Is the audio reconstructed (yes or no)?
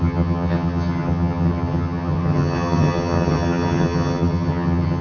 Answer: yes